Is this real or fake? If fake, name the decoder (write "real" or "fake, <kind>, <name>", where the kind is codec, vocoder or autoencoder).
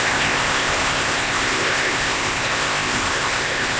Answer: fake, codec, ZipCodec